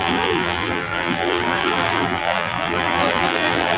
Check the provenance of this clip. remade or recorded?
remade